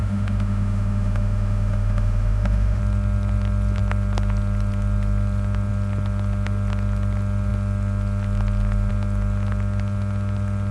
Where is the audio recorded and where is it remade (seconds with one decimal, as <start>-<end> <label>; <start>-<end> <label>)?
0.0-2.8 remade; 2.8-10.7 recorded